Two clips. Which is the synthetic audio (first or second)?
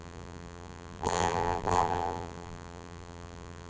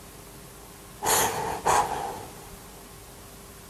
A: first